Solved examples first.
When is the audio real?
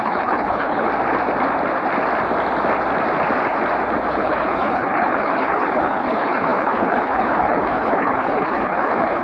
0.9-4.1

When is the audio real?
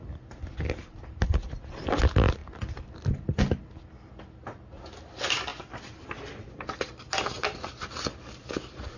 0.0-9.0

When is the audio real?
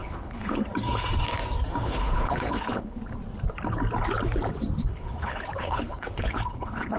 0.6-1.8; 3.0-4.8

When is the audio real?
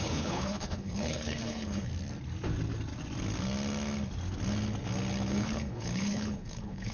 1.9-5.3